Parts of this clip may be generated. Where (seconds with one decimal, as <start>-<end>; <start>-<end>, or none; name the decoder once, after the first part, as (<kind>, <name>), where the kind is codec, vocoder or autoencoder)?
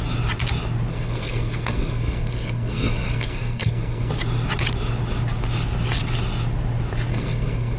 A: 0.9-4.1 (codec, SNAC); 7.1-7.8